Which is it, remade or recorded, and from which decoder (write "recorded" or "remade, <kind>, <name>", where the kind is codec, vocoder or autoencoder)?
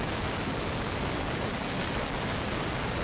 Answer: recorded